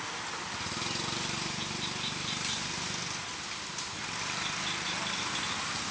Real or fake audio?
real